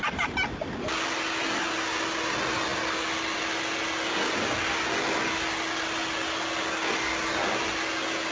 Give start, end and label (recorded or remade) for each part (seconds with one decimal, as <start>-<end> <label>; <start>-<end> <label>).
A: 0.0-8.3 recorded